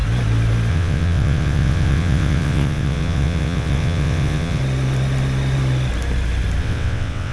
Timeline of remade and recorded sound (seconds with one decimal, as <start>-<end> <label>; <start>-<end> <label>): 0.0-0.7 recorded; 0.7-4.6 remade; 4.6-6.6 recorded; 6.6-7.3 remade